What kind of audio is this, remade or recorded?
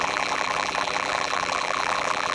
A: remade